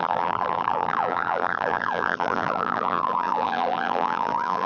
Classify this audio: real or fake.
fake